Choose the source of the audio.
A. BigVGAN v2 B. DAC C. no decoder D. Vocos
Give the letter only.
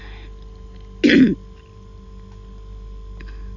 C